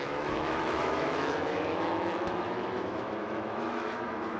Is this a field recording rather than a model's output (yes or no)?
no